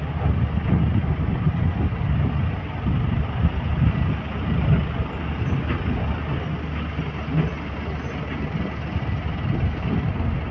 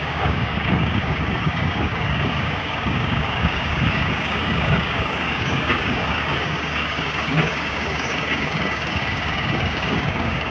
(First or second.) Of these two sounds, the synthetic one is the second